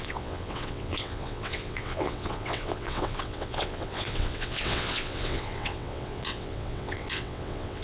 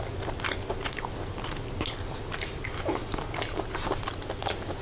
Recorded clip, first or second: second